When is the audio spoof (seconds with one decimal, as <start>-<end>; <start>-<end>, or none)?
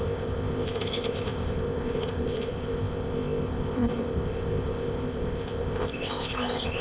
0.0-6.8